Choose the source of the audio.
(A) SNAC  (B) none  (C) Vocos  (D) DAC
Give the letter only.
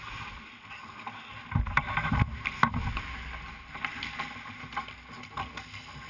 B